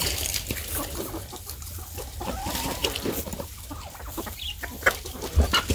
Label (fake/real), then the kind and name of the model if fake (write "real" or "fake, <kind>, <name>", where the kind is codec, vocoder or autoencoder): real